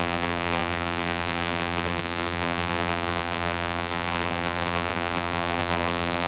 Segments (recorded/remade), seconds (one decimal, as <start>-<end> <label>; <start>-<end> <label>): 0.0-6.3 remade